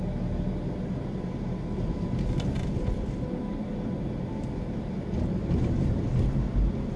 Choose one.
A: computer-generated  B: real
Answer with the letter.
B